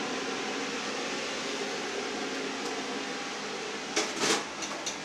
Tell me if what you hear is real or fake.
real